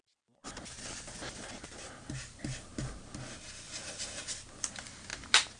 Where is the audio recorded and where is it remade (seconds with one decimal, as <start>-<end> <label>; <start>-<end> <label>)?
0.0-5.6 recorded